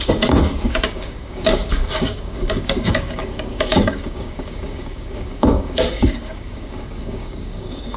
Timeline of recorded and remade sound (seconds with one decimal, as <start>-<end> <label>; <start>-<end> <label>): 0.0-8.0 remade